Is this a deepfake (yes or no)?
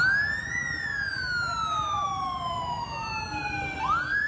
no